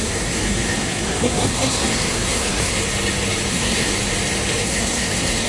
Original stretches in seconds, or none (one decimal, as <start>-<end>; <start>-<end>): 2.8-3.5; 3.9-4.6